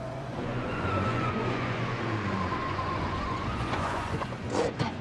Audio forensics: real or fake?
fake